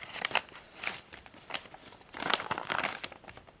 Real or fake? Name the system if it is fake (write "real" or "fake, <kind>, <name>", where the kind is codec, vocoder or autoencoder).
fake, vocoder, BigVGAN v2